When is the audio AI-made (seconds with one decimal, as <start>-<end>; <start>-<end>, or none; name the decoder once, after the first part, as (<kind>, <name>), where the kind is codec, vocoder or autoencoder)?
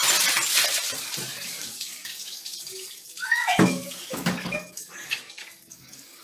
1.3-6.2 (codec, DAC)